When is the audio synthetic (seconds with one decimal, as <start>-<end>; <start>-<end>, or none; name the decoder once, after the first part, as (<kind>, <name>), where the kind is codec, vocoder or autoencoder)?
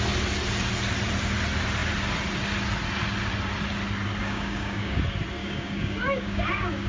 4.2-5.0 (codec, DAC); 5.4-6.9